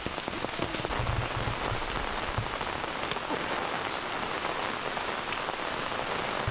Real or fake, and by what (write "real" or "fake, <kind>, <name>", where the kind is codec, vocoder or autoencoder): real